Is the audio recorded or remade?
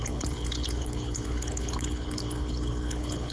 remade